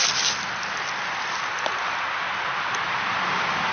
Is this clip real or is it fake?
real